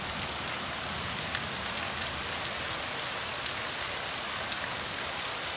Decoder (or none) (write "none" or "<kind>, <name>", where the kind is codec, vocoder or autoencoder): none